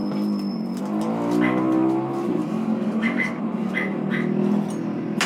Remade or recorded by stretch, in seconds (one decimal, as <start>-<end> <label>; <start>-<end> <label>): 0.0-2.4 recorded; 2.4-3.4 remade; 3.4-5.3 recorded